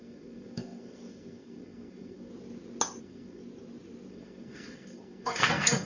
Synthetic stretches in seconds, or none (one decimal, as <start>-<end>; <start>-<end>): 0.0-2.3; 3.0-3.4; 4.1-5.9